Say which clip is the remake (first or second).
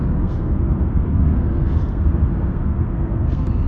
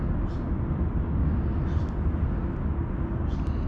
first